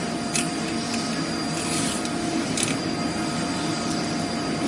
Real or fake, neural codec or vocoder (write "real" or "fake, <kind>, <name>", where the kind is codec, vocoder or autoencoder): fake, vocoder, BigVGAN v2